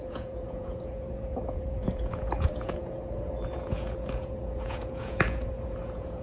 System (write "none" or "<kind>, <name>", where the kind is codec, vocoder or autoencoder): vocoder, Vocos